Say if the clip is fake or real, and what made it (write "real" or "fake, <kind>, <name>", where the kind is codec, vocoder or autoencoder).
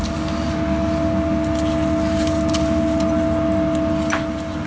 real